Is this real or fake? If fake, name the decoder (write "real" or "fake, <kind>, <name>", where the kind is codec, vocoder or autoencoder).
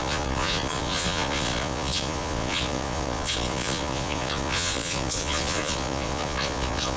fake, vocoder, Vocos